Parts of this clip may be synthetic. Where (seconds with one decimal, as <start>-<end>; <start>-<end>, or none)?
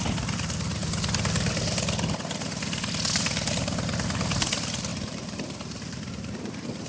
4.9-6.5